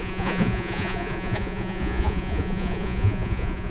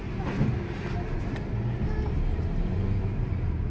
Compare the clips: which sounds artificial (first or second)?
first